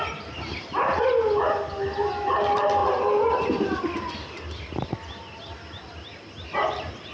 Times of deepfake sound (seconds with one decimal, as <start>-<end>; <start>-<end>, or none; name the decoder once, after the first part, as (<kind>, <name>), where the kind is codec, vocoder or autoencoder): none